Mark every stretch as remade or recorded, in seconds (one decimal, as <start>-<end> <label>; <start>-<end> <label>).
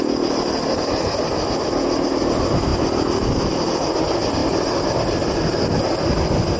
0.0-6.6 recorded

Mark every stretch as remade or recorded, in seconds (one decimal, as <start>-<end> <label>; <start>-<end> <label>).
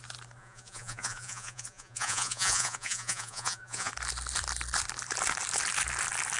0.0-0.4 recorded; 0.4-3.9 remade; 3.9-6.4 recorded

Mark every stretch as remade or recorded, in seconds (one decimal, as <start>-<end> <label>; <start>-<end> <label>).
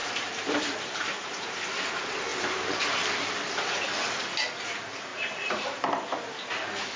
0.0-1.2 remade; 1.2-2.3 recorded; 2.3-3.3 remade; 3.3-5.1 recorded; 5.1-5.8 remade; 5.8-7.0 recorded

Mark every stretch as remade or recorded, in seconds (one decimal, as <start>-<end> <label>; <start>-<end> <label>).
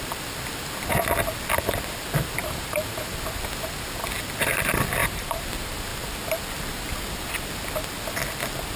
0.0-2.4 recorded; 2.4-3.1 remade; 3.1-5.0 recorded; 5.0-5.5 remade; 5.5-8.8 recorded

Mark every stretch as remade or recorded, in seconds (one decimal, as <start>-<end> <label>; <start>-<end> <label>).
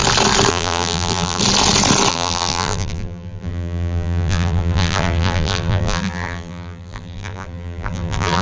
0.0-0.5 recorded; 0.5-1.4 remade; 1.4-2.1 recorded; 2.1-8.4 remade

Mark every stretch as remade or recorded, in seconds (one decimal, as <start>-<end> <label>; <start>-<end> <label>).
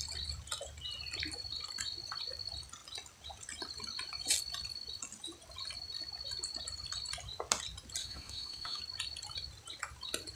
0.0-8.0 recorded; 8.0-8.8 remade; 8.8-10.4 recorded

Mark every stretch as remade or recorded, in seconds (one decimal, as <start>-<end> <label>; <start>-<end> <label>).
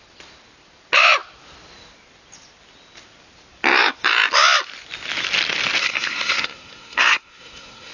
0.0-5.8 recorded; 5.8-7.9 remade